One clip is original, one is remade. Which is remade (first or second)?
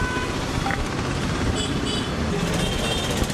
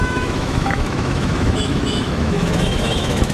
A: second